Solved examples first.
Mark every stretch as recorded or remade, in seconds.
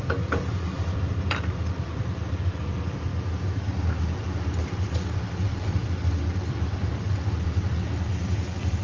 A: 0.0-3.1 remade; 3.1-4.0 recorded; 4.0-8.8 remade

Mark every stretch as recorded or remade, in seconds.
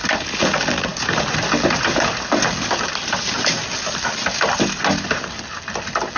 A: 0.0-6.2 recorded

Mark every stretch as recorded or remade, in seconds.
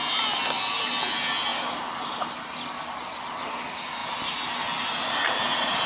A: 0.0-5.9 recorded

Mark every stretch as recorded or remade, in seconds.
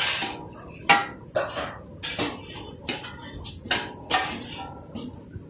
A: 0.0-5.5 recorded